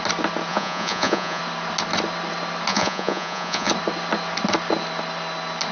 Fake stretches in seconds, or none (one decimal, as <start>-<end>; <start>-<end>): 0.5-1.4; 2.7-3.7